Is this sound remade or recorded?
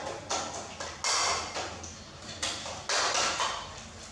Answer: recorded